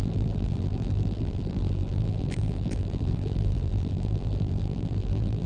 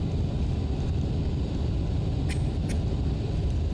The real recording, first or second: second